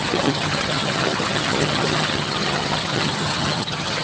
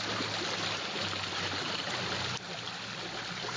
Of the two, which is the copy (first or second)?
first